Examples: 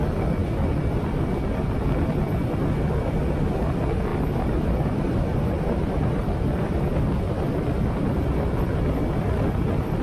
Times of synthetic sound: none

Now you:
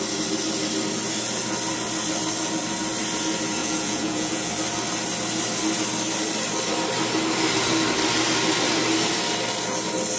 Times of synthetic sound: 3.6-4.5 (vocoder, Vocos)

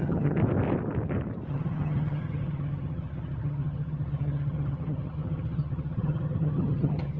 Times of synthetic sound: 0.0-0.4 (vocoder, HiFi-GAN); 1.5-7.2

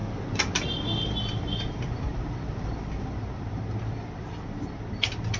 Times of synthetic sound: none

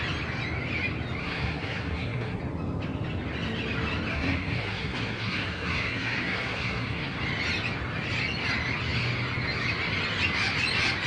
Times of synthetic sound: 1.2-2.4 (codec, SNAC); 4.1-7.2

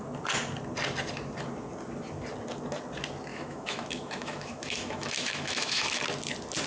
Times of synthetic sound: 3.3-6.0 (autoencoder, DAC-VAE)

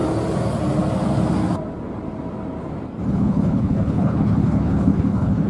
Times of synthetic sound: 3.1-5.5 (codec, HILCodec)

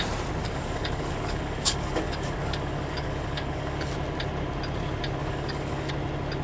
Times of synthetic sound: 0.4-3.9 (codec, DAC); 5.2-5.9